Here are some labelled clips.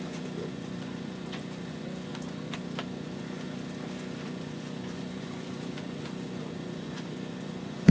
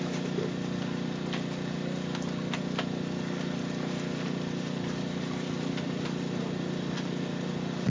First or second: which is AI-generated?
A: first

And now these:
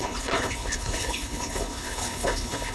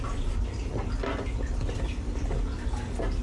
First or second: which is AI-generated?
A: first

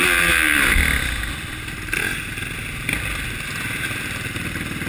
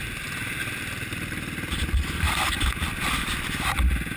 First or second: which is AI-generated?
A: second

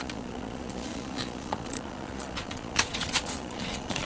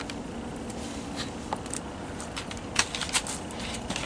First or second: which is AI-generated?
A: first